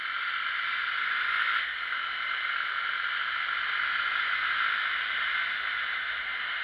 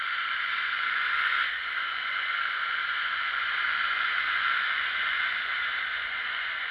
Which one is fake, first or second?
second